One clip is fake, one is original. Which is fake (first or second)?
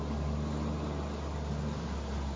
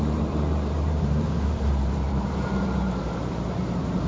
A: second